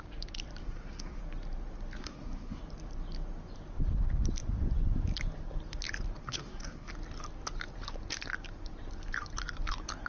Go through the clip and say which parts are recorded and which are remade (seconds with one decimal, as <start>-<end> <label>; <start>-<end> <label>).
0.0-0.6 recorded; 0.6-1.2 remade; 1.2-2.0 recorded; 2.0-2.6 remade; 2.6-6.2 recorded; 6.2-6.9 remade; 6.9-10.1 recorded